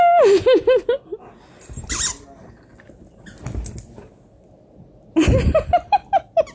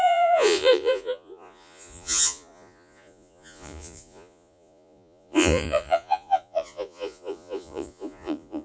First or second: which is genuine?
first